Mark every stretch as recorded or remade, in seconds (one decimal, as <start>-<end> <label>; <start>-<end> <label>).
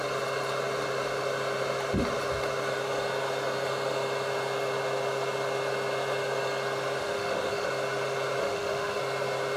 0.0-7.0 recorded; 7.0-7.7 remade; 7.7-8.4 recorded; 8.4-9.0 remade; 9.0-9.6 recorded